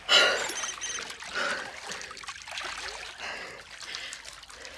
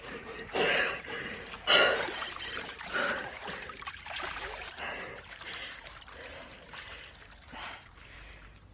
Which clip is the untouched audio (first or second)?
first